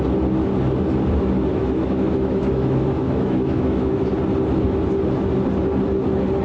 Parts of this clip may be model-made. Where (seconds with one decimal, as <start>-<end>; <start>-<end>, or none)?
1.5-4.1